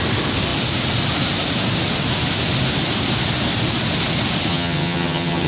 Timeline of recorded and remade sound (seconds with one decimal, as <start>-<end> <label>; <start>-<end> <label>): 0.0-4.5 recorded; 4.5-5.5 remade